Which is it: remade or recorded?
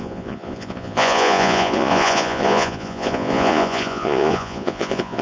remade